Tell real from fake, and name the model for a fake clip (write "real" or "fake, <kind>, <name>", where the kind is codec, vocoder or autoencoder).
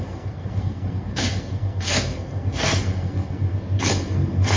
fake, codec, SNAC